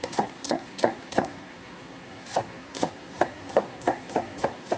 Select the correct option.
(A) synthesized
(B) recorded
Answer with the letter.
A